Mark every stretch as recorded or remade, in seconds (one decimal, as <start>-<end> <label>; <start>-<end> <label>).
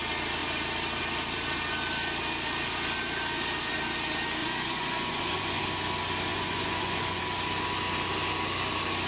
0.0-4.4 recorded; 4.4-5.6 remade; 5.6-6.3 recorded; 6.3-7.2 remade; 7.2-9.1 recorded